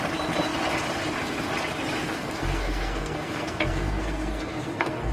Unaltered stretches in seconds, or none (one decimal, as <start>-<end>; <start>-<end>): 0.0-2.0